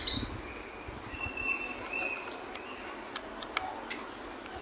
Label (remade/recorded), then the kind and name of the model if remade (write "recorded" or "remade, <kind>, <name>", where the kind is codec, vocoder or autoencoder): recorded